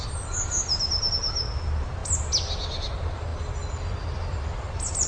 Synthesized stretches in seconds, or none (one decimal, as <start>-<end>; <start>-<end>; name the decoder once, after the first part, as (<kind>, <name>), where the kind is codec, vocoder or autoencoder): none